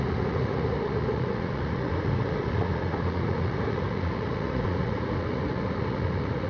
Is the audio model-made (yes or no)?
yes